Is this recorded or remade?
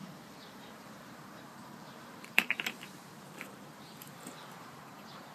remade